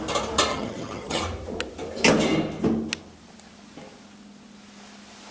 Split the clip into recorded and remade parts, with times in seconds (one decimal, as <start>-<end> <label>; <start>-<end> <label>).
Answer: 0.0-0.5 recorded; 0.5-1.2 remade; 1.2-5.3 recorded